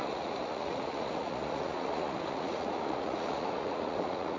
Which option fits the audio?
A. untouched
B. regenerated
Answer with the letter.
B